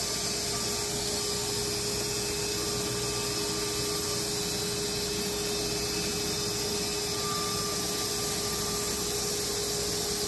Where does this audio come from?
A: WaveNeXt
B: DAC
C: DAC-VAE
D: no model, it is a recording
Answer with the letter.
D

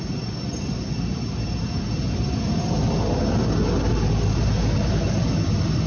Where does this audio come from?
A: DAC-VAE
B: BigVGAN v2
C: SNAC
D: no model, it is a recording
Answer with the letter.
D